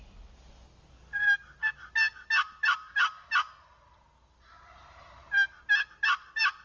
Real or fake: real